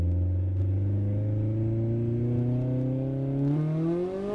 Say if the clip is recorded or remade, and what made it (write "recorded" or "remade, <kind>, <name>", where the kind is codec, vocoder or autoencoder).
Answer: recorded